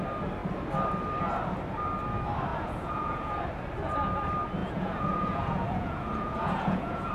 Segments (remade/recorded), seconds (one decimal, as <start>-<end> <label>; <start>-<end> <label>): 0.0-2.5 recorded; 2.5-3.3 remade; 3.3-4.6 recorded; 4.6-7.1 remade